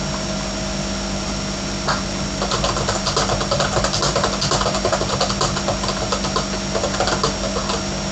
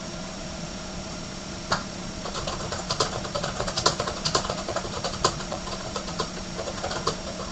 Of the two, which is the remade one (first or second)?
second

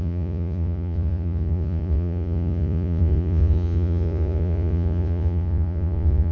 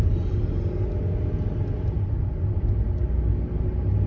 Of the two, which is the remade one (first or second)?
first